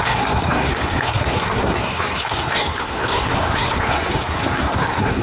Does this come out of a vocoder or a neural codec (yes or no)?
yes